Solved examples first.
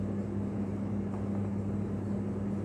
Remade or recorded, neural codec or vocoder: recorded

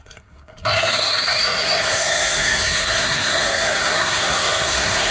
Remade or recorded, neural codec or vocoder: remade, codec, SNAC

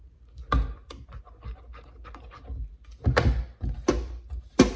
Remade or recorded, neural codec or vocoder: recorded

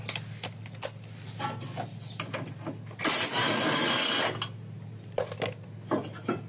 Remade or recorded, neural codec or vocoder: recorded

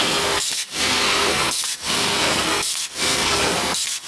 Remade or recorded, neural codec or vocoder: remade, codec, SNAC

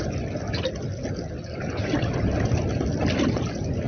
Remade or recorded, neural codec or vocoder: recorded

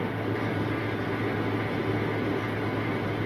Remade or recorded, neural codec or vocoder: recorded